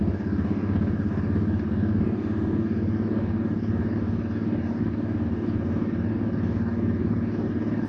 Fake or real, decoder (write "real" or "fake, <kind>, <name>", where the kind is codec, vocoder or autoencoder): fake, codec, DAC